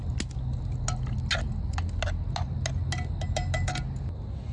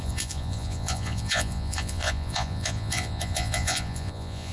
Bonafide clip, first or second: first